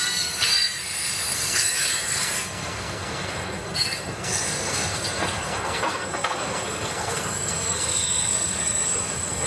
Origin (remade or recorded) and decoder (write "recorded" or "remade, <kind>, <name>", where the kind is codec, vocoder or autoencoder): remade, codec, SNAC